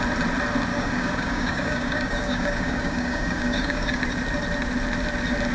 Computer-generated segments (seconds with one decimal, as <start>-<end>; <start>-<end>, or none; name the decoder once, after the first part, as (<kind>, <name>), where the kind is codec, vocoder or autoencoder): 0.7-4.0 (codec, DAC)